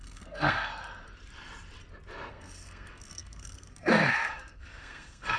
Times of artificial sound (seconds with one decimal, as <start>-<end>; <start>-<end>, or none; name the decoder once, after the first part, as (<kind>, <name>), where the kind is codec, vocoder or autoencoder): 0.0-0.7 (codec, SNAC); 2.3-5.4